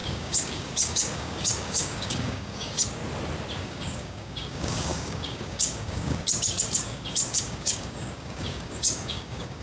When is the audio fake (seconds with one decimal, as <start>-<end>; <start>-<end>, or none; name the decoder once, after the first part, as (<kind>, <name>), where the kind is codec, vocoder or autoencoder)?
0.0-3.0 (codec, DAC); 3.6-9.6